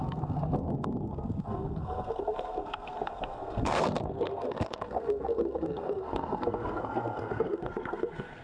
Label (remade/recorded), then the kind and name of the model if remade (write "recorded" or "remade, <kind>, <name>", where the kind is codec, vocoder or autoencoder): remade, codec, SNAC